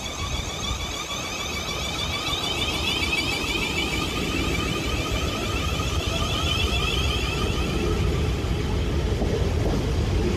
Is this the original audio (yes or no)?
yes